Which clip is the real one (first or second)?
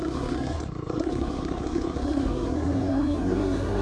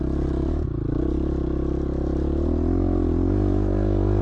second